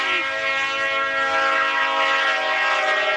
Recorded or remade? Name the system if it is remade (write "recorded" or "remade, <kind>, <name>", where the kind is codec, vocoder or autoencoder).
recorded